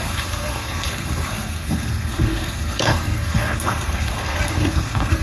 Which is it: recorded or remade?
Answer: remade